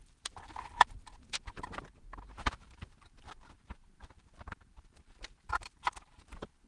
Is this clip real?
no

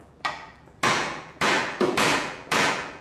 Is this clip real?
no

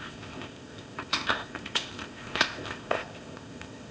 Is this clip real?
no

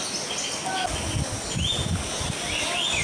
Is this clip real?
yes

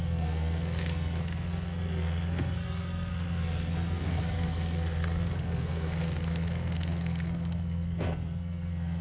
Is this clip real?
no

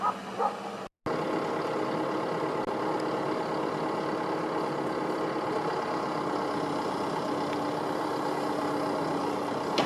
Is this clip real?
yes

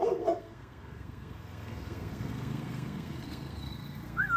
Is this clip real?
no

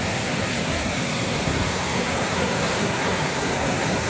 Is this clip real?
no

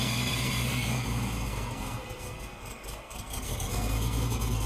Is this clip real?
no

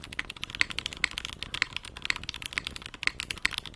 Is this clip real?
yes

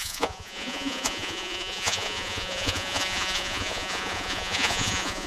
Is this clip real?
no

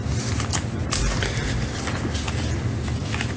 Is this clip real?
yes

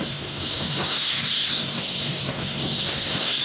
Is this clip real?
no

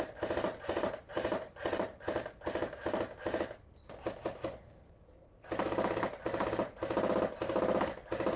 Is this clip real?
yes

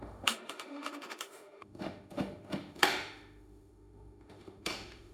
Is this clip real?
no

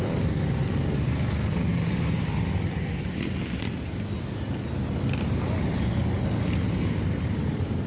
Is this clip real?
yes